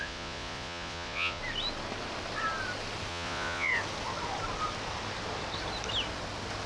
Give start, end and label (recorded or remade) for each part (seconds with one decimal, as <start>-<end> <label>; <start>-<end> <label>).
0.0-1.4 remade; 1.4-3.1 recorded; 3.1-3.7 remade; 3.7-6.7 recorded